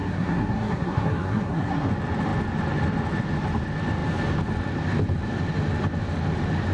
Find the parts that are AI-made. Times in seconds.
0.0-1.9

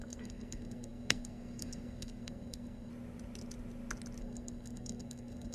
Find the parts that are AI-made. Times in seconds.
0.0-2.9; 4.2-5.5

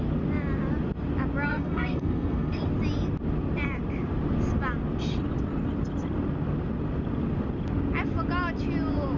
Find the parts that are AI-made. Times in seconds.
1.5-2.6

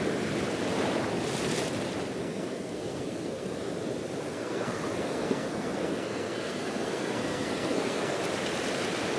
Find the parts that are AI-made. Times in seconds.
2.2-3.7; 4.2-8.2